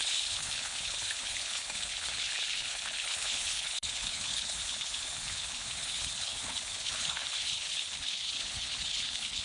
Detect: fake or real fake